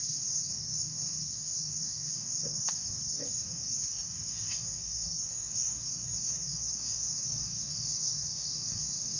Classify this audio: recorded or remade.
remade